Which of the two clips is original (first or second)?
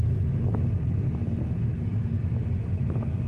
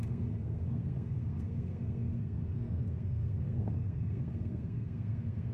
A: first